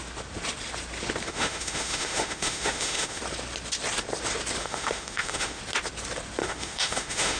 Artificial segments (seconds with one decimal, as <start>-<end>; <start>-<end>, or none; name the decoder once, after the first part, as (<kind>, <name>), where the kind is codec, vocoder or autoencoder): 1.3-3.2 (autoencoder, DAC-VAE); 4.6-5.6; 6.4-7.4